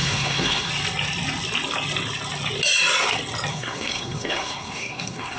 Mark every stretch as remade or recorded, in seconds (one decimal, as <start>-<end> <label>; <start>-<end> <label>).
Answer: 0.0-0.7 remade; 0.7-3.5 recorded; 3.5-5.4 remade